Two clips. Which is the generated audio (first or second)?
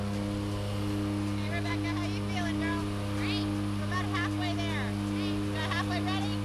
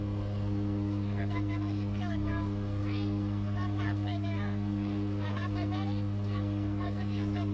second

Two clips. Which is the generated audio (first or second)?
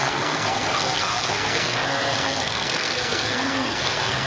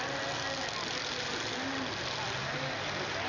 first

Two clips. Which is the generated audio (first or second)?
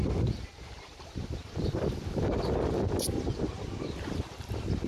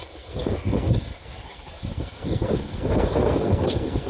second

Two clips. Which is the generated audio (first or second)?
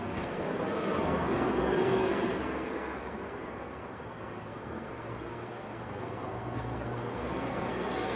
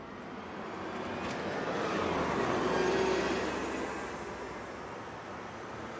first